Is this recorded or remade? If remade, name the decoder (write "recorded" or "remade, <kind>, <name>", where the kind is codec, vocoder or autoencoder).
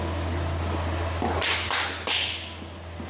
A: recorded